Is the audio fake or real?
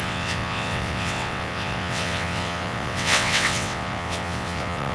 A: fake